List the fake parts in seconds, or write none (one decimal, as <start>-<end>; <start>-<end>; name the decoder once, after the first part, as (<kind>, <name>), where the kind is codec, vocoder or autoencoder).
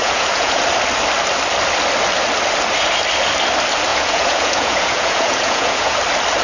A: 0.0-0.6 (vocoder, Vocos); 3.9-6.0